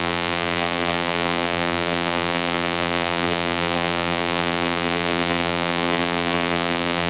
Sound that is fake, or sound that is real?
fake